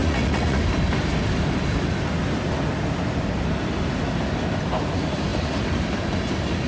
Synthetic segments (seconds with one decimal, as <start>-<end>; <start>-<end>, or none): 0.0-0.6